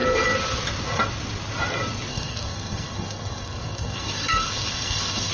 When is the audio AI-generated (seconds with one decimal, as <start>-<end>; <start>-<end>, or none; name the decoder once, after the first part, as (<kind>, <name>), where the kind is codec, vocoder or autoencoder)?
2.1-5.3 (codec, SNAC)